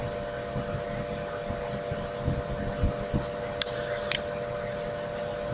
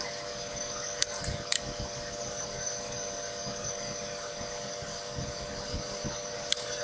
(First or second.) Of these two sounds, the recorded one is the first